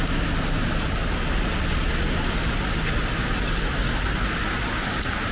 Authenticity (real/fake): real